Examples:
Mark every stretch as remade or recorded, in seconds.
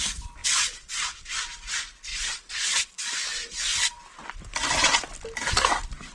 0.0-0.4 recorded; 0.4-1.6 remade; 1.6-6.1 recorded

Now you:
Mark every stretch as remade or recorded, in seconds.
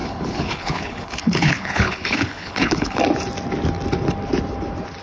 0.0-3.0 remade; 3.0-5.0 recorded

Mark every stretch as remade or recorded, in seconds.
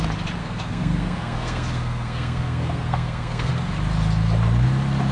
0.0-0.4 recorded; 0.4-3.5 remade; 3.5-5.1 recorded